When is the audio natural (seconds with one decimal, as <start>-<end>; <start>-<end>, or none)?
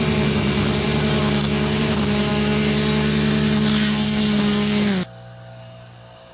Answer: 1.2-1.8; 2.3-6.3